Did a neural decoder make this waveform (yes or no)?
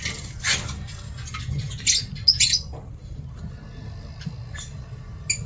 no